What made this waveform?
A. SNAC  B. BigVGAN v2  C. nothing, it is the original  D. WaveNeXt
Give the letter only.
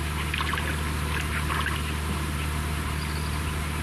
C